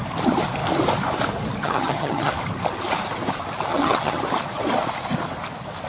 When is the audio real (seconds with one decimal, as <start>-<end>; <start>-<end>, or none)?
0.0-1.6; 2.3-3.7; 4.2-5.9